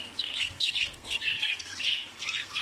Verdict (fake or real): fake